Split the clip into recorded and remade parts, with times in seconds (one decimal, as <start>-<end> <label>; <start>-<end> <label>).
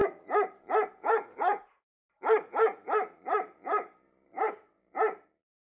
0.0-5.7 remade